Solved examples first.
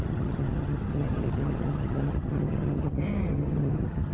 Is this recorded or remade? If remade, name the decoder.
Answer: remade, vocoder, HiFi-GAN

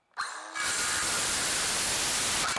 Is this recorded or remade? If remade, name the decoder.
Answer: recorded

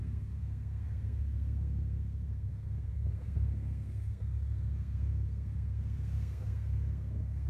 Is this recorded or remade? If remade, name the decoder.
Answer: remade, codec, SNAC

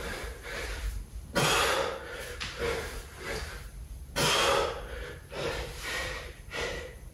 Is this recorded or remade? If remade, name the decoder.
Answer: recorded